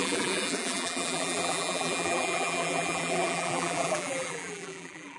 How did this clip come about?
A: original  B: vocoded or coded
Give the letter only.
B